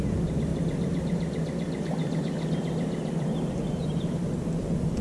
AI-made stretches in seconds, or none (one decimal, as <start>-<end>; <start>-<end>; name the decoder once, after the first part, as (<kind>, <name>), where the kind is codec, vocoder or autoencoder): 0.0-0.5 (vocoder, BigVGAN v2); 3.5-5.0

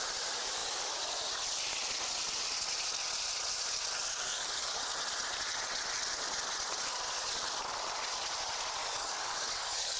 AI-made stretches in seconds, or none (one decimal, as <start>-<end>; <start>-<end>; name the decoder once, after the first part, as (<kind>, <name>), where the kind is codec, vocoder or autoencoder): 4.1-4.8 (codec, DAC); 8.8-10.0

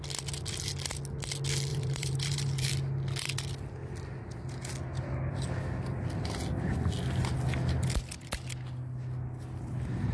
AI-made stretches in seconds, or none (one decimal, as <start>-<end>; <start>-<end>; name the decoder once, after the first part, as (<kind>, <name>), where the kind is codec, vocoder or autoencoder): 1.7-2.7 (vocoder, BigVGAN v2)

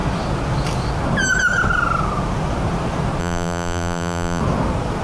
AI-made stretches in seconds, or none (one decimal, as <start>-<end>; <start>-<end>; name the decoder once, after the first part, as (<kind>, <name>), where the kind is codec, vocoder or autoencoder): 3.2-4.4 (vocoder, BigVGAN v2)

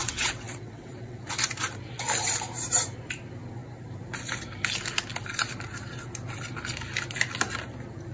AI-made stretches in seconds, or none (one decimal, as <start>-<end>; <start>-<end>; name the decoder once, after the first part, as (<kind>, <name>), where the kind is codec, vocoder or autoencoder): 0.0-1.2 (vocoder, WaveNeXt)

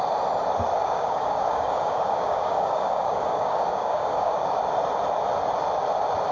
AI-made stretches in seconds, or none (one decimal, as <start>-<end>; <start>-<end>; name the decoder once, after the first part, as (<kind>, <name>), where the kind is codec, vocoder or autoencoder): 0.8-4.6 (codec, DAC)